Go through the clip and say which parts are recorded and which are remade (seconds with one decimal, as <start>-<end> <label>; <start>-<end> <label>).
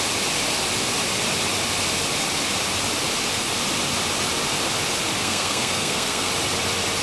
0.0-5.2 recorded; 5.2-6.3 remade; 6.3-7.0 recorded